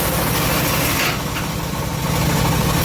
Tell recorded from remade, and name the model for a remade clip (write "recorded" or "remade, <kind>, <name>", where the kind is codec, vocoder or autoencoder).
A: recorded